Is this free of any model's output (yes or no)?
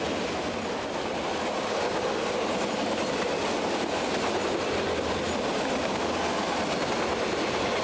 yes